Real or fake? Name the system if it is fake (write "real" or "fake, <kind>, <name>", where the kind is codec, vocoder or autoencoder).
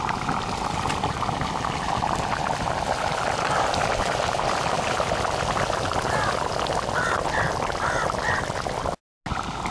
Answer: real